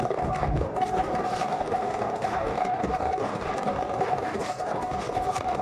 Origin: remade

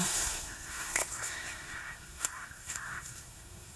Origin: remade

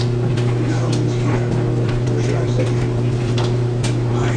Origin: recorded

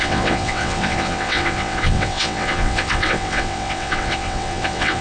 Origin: remade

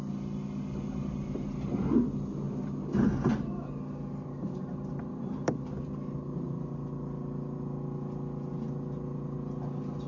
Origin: recorded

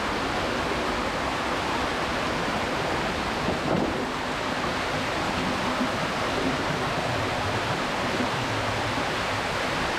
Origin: recorded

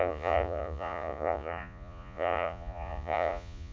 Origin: remade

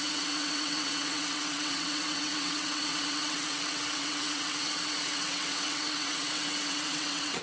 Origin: remade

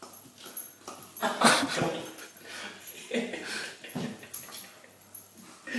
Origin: recorded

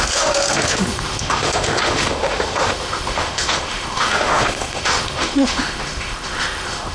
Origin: remade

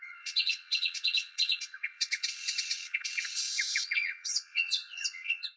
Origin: remade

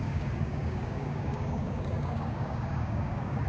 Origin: remade